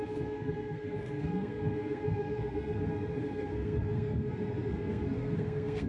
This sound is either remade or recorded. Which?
remade